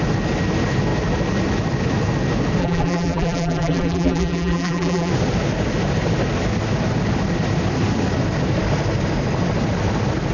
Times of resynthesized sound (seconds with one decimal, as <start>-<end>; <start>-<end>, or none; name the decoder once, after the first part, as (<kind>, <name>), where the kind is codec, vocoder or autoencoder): 2.6-5.1 (vocoder, BigVGAN v2)